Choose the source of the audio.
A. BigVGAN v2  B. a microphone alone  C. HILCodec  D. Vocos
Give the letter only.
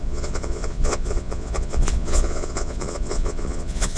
D